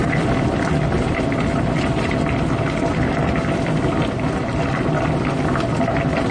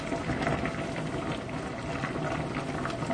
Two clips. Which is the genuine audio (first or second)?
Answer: second